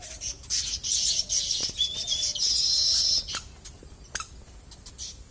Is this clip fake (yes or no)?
no